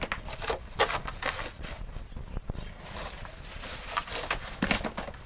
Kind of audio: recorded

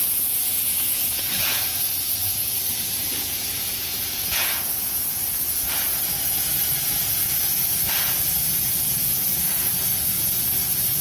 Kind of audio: remade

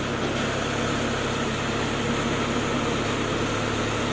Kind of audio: recorded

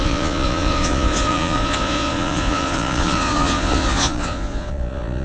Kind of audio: remade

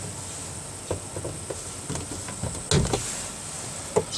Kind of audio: recorded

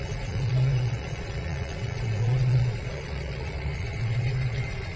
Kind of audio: remade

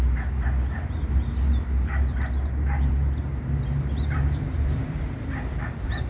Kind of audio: remade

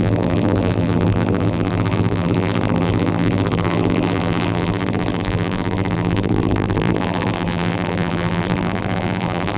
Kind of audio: remade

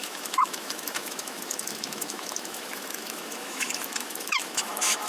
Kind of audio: remade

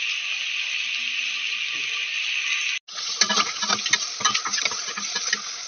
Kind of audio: recorded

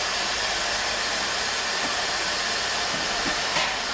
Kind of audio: recorded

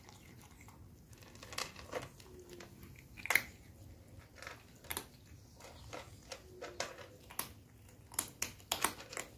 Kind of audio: recorded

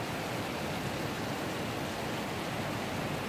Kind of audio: recorded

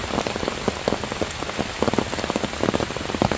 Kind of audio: recorded